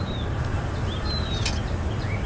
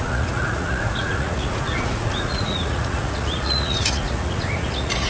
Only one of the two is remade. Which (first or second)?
second